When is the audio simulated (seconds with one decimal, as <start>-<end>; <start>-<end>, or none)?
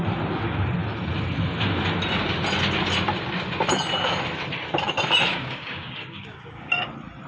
5.3-6.7